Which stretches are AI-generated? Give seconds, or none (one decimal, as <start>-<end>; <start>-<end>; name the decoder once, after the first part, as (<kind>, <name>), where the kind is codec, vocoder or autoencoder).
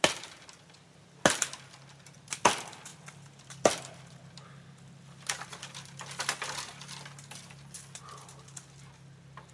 none